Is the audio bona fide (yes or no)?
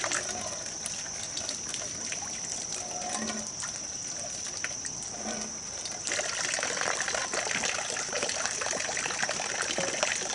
yes